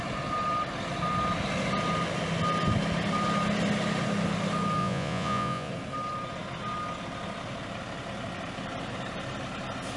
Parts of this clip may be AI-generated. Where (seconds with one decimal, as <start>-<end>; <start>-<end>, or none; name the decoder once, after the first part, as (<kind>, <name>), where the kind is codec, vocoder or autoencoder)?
4.8-5.7 (vocoder, Vocos)